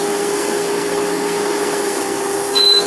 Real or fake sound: fake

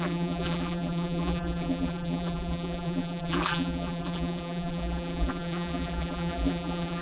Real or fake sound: fake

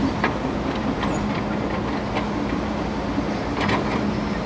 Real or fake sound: real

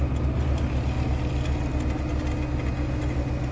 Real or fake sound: real